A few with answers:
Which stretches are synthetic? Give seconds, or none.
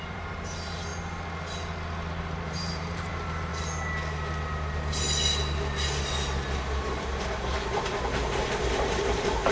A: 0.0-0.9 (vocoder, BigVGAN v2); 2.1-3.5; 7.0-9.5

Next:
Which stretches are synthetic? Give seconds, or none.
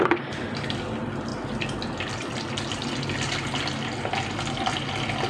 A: none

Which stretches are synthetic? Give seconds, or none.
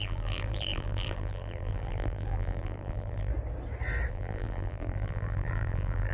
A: 0.0-3.3 (vocoder, BigVGAN v2); 4.1-6.1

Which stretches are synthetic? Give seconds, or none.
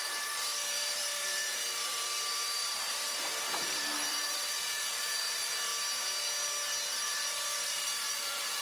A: 0.0-5.7 (vocoder, BigVGAN v2); 7.0-8.6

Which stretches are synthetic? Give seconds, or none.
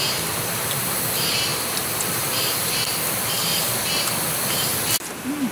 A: 0.0-5.5 (vocoder, BigVGAN v2)